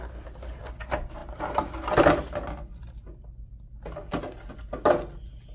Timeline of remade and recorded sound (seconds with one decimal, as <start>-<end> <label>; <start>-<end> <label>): 0.0-5.5 recorded

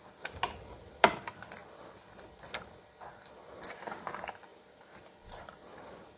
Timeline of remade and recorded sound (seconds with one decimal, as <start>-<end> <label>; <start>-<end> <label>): 0.0-4.5 recorded; 4.5-5.2 remade; 5.2-6.2 recorded